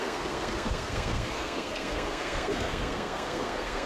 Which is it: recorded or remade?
remade